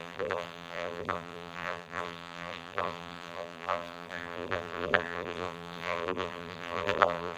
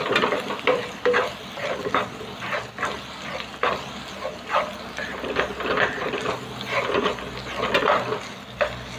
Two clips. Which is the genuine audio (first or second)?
second